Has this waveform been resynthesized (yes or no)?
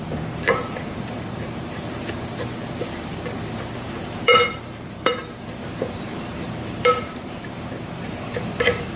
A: yes